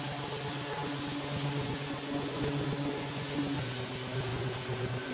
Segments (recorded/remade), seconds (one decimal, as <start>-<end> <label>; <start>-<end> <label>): 0.0-0.8 recorded; 0.8-3.9 remade; 3.9-4.3 recorded; 4.3-5.1 remade